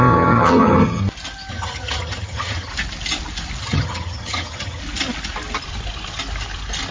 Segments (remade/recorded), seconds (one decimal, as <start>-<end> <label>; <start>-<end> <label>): 0.0-1.0 remade; 1.0-1.5 recorded; 1.5-2.7 remade; 2.7-3.6 recorded; 3.6-4.8 remade; 4.8-6.9 recorded